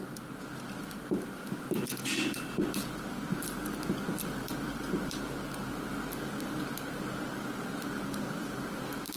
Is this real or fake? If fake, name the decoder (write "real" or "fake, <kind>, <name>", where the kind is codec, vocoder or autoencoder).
real